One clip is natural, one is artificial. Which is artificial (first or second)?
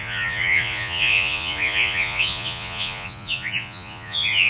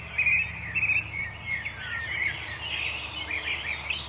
first